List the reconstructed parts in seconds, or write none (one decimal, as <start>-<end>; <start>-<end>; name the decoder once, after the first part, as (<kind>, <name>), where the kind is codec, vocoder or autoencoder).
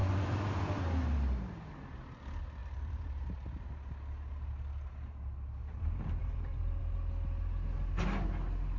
0.0-0.8 (vocoder, BigVGAN v2); 2.6-3.7; 5.6-6.8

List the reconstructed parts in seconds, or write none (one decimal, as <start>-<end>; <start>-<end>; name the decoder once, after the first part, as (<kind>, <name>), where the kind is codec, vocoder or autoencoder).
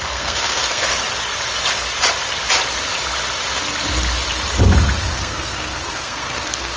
0.0-0.9 (codec, SNAC); 5.0-6.8